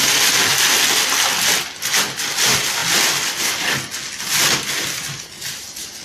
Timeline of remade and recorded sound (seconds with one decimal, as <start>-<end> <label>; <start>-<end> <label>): 0.0-6.0 recorded